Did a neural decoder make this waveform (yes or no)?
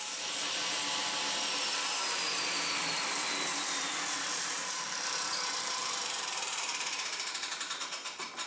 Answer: yes